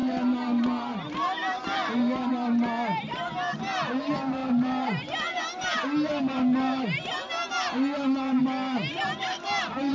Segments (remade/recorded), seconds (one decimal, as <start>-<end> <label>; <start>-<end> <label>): 0.0-9.9 recorded